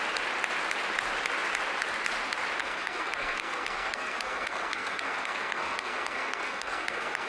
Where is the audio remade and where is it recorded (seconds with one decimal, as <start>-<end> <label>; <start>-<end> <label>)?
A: 0.0-2.6 recorded; 2.6-7.3 remade